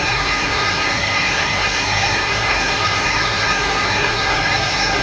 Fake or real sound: fake